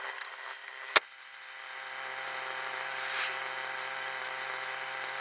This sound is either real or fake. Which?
real